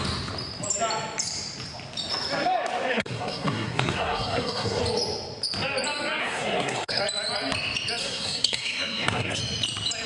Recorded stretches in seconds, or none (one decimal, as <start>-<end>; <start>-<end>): 0.0-2.9; 4.8-6.2; 7.0-8.0; 9.4-10.1